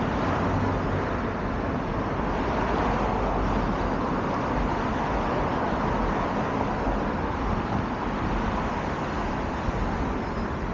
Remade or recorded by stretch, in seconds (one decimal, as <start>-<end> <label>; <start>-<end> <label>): 0.0-10.7 recorded